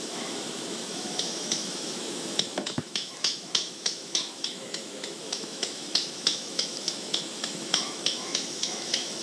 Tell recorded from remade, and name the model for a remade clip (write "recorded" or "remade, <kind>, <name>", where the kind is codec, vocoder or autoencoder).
remade, autoencoder, DAC-VAE